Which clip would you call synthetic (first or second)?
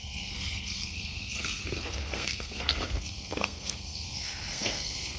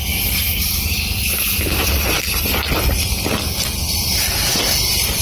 first